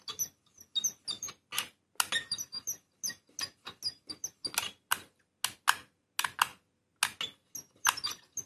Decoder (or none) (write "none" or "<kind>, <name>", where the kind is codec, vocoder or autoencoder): none